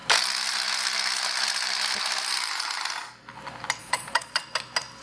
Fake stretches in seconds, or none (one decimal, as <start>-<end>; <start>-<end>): 3.8-4.4